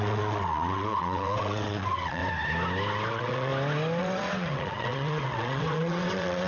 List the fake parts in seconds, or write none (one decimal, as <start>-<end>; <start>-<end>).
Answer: 0.0-2.2; 3.1-3.5; 4.0-6.5